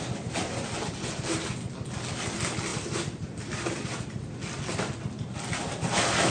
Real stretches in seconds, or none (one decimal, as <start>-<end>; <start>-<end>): 0.0-2.7; 4.3-6.3